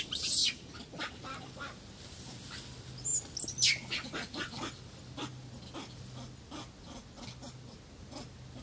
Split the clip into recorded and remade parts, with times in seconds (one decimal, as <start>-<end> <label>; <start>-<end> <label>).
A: 0.0-8.6 recorded